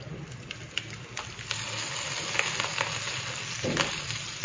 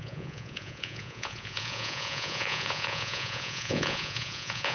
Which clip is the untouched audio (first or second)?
first